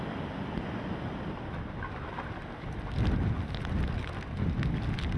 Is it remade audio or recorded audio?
recorded